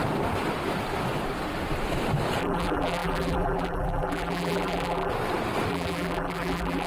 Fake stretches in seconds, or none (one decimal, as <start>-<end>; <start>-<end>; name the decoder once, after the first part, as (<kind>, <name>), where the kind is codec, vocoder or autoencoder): 2.4-5.1 (vocoder, BigVGAN v2); 5.7-6.9